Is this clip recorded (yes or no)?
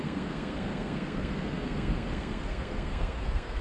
no